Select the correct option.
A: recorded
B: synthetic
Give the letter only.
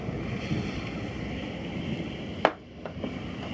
A